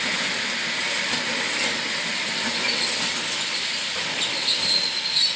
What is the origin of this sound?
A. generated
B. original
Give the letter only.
B